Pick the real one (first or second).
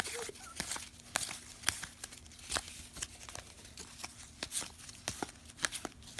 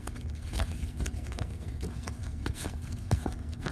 first